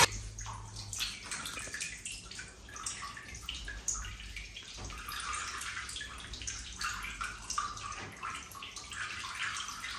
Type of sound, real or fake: real